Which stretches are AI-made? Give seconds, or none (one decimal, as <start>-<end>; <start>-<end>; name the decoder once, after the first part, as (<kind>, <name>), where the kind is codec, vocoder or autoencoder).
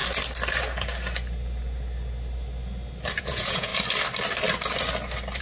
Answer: 3.2-3.7 (vocoder, Vocos)